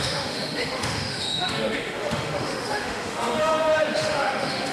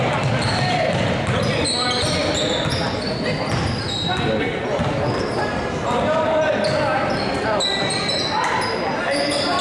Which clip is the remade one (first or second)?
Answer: first